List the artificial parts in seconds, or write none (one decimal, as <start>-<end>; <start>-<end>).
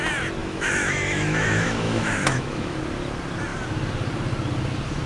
0.4-2.8